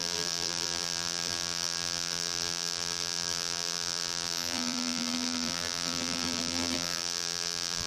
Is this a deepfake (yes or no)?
yes